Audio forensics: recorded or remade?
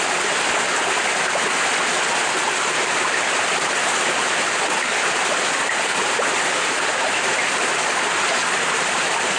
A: recorded